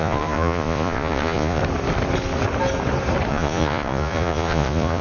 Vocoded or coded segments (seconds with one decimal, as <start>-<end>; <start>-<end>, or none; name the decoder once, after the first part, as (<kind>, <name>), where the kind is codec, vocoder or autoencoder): 0.0-1.6 (vocoder, Vocos); 3.3-5.0